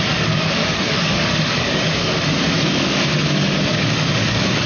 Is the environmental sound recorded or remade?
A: remade